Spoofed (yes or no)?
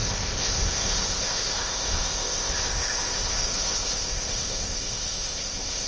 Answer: yes